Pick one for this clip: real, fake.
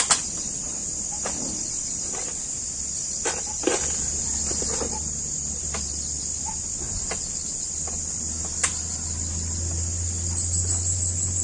real